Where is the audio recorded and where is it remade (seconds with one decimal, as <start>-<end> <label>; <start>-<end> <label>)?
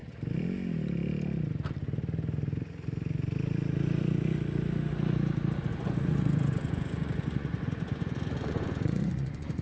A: 0.0-5.7 recorded; 5.7-9.6 remade